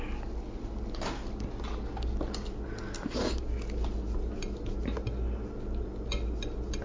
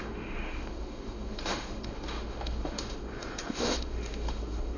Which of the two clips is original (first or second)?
first